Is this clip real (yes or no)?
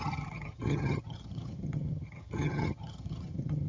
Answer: no